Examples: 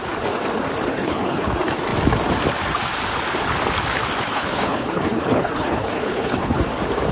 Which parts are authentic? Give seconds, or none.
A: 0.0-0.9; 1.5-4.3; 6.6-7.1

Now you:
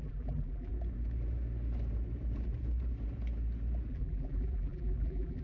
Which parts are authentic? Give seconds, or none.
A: 0.7-3.9

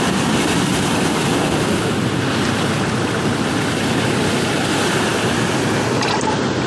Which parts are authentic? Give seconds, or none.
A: 0.0-6.7

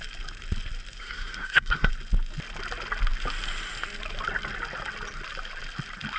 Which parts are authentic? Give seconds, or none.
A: 0.0-1.0; 1.9-6.2

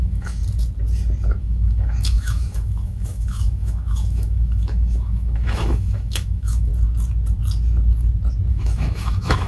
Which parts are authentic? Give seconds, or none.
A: 0.4-1.4; 6.7-8.5

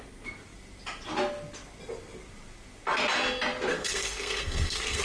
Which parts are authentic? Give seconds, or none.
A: 0.0-3.7

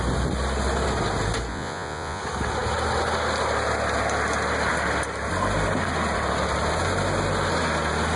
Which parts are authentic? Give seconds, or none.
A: 0.0-1.5; 2.2-8.2